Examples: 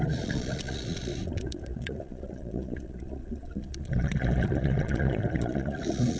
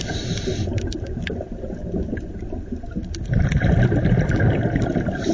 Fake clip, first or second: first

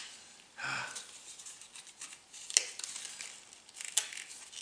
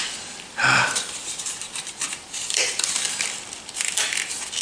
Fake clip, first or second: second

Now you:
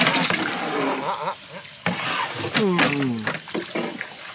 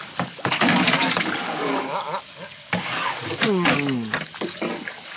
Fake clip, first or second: second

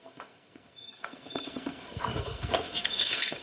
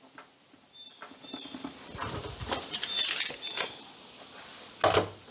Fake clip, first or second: first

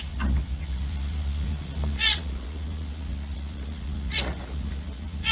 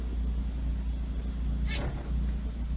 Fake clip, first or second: first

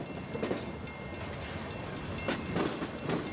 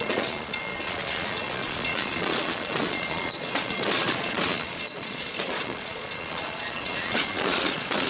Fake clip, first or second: second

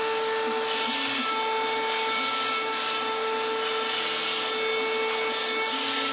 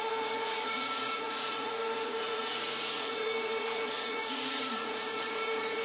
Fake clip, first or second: second